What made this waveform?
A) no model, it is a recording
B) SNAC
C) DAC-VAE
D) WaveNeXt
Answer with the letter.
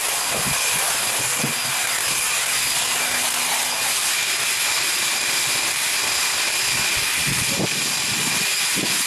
A